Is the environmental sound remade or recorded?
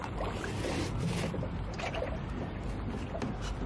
recorded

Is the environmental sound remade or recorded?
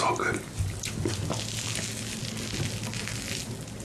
recorded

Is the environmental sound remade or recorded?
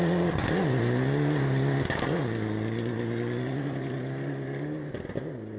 recorded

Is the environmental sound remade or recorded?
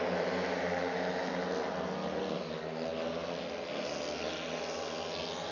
recorded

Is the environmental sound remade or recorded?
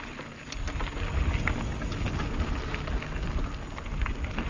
recorded